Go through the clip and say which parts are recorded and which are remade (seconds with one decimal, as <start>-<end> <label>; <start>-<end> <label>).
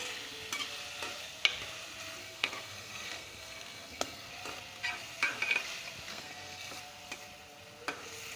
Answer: 0.0-2.2 recorded; 2.2-4.3 remade; 4.3-6.1 recorded; 6.1-6.8 remade; 6.8-8.4 recorded